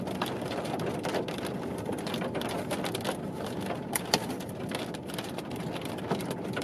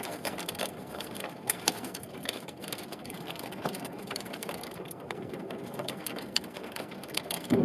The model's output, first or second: second